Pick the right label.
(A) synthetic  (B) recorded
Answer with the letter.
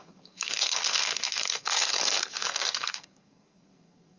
A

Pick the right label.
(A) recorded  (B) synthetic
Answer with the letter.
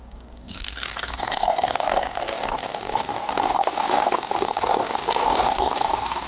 B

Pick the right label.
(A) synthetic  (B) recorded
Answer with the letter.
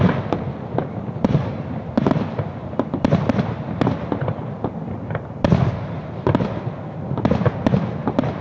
B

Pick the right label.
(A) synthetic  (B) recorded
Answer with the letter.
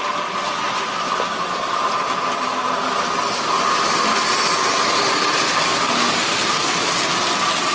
B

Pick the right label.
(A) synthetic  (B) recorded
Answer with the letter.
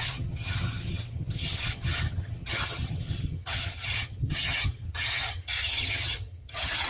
A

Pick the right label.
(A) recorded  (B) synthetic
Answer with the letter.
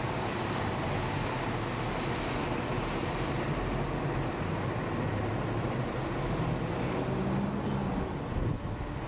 A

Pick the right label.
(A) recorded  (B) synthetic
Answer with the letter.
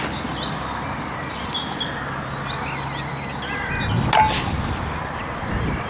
A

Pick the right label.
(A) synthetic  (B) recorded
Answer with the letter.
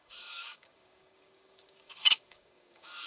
A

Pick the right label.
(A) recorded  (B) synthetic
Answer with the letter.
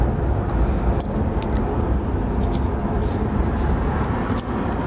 A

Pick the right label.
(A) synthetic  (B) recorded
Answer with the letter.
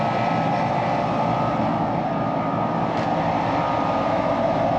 B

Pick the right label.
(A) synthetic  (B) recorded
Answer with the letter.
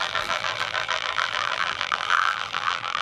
A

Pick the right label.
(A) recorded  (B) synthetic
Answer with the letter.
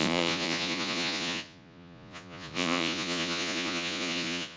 B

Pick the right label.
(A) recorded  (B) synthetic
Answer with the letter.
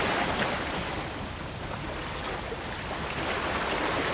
A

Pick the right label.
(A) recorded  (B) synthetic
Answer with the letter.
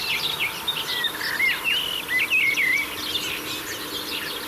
A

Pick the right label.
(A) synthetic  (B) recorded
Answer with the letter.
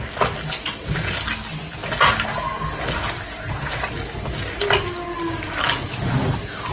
B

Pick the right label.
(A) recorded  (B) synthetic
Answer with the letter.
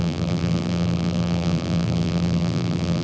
B